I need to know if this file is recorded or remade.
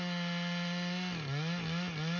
recorded